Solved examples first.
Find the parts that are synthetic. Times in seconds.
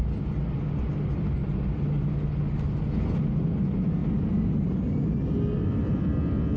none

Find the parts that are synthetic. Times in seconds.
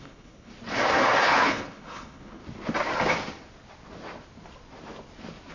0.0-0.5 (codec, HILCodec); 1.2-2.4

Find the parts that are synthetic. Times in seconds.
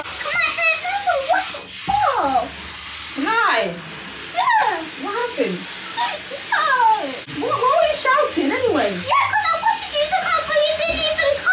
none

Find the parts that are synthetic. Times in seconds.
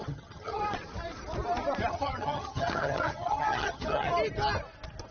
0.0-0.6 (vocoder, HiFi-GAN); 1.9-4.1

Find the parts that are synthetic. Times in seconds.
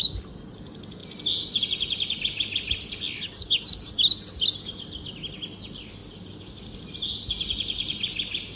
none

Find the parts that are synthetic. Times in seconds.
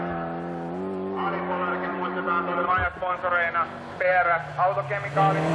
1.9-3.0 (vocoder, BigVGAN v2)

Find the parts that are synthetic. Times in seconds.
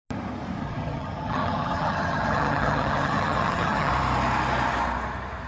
0.6-3.9 (vocoder, HiFi-GAN)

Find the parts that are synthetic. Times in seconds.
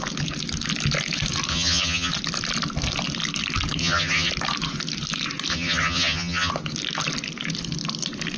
1.5-2.1 (vocoder, HiFi-GAN); 3.8-4.3; 5.5-6.5